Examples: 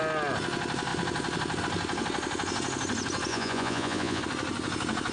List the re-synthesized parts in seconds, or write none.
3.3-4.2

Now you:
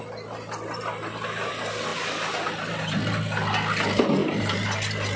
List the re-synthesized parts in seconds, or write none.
4.2-4.8

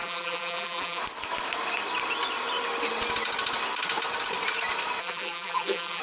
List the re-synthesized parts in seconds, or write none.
0.0-1.0; 5.0-6.0

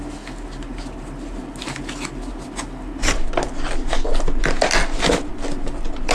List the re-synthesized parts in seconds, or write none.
4.8-5.3

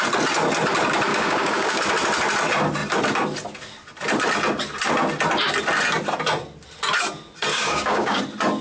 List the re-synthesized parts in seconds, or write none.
1.1-1.8; 7.5-8.2

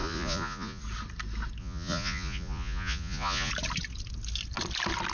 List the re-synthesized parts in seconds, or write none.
0.0-0.8; 1.6-3.5

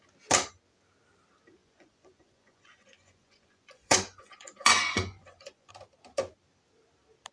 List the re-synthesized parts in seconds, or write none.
1.6-5.7